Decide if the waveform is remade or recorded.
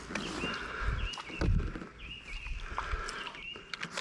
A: recorded